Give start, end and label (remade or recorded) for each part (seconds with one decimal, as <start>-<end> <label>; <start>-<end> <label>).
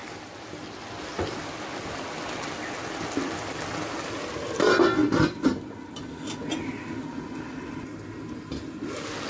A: 0.0-9.3 recorded